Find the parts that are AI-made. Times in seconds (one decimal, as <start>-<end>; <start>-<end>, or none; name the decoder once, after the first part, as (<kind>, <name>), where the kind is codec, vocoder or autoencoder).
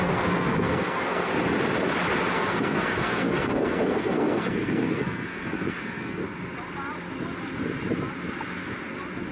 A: 0.0-1.3 (codec, SNAC); 2.3-6.2